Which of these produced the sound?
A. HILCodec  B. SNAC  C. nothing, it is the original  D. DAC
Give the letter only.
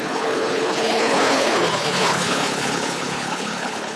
A